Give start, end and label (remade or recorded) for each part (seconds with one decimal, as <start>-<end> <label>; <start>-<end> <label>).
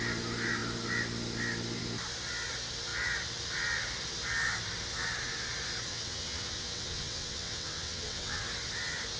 0.0-5.9 recorded; 5.9-8.4 remade; 8.4-9.2 recorded